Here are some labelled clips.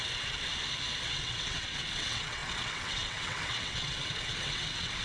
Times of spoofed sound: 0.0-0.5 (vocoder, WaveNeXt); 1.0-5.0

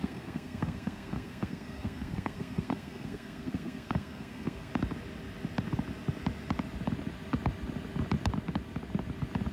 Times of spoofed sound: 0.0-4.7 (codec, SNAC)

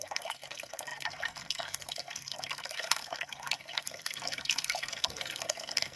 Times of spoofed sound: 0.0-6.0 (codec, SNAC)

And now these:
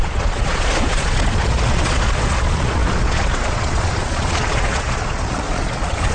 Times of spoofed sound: 0.0-6.1 (vocoder, Vocos)

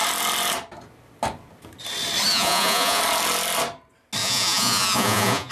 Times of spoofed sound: 2.3-3.0 (vocoder, Vocos); 4.2-5.5

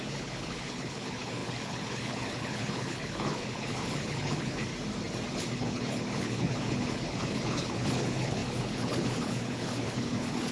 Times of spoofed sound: 0.0-4.7 (codec, HILCodec); 5.3-10.5

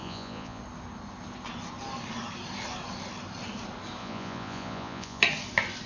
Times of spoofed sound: 0.0-0.6 (vocoder, Vocos); 4.0-5.2

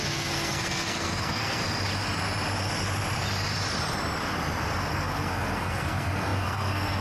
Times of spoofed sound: 0.0-1.6 (codec, SNAC); 4.9-7.0